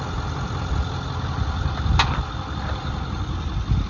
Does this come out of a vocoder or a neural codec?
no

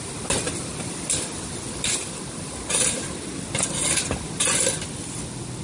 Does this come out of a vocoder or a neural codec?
no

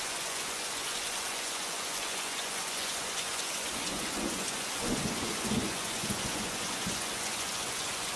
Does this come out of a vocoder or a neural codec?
yes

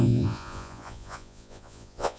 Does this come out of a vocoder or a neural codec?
yes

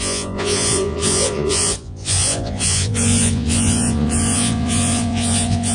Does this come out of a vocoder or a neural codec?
yes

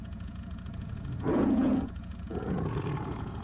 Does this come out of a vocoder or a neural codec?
yes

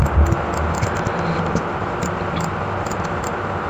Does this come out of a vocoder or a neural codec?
no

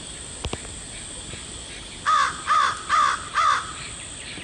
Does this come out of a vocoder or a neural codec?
no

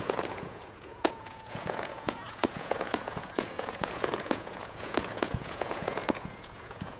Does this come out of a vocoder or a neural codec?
yes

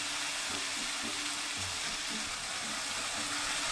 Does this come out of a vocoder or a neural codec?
no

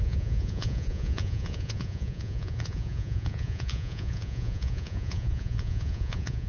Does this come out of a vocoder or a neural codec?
yes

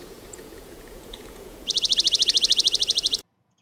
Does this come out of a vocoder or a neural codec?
yes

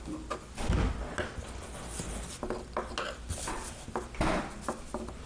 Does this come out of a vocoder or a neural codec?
no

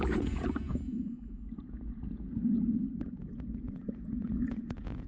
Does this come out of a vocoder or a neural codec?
yes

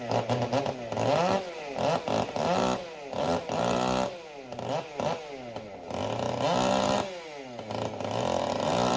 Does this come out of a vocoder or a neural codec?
no